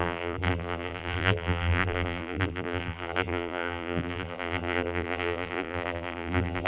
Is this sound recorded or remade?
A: remade